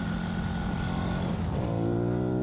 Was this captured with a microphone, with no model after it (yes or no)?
yes